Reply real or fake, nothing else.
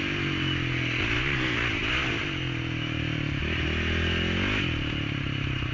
real